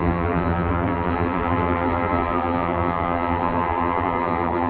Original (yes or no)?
no